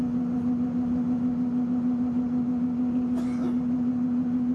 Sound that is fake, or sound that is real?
real